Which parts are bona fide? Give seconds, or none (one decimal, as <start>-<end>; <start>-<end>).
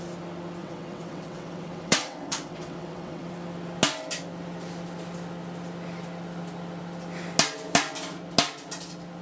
0.0-0.6; 3.3-9.2